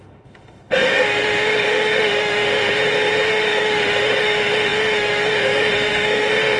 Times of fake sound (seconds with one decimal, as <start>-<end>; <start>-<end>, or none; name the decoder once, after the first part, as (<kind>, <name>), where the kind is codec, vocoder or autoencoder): 0.0-2.8 (autoencoder, DAC-VAE); 3.3-6.6